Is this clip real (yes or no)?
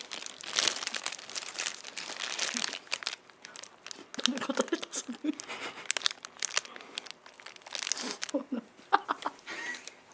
yes